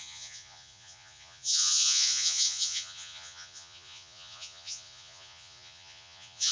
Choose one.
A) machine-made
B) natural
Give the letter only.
A